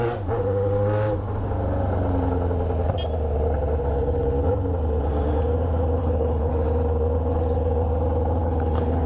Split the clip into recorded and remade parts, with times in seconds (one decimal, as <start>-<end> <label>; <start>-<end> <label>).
0.0-6.0 recorded; 6.0-6.5 remade; 6.5-8.4 recorded; 8.4-9.1 remade

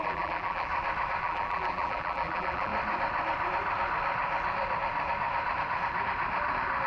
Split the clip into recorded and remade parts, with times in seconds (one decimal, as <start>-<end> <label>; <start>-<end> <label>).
0.0-0.7 remade; 0.7-1.2 recorded; 1.2-2.7 remade; 2.7-6.9 recorded

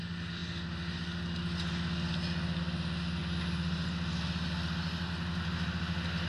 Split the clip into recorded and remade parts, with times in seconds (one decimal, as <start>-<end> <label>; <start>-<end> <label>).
0.0-6.3 recorded